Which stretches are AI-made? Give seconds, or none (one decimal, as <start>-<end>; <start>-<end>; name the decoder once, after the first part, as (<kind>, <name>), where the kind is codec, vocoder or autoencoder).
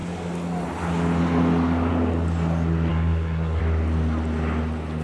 2.9-3.6 (codec, SNAC)